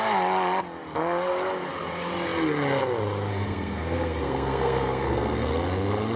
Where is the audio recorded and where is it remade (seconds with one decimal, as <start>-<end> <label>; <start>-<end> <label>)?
0.0-3.3 recorded; 3.3-5.5 remade; 5.5-6.2 recorded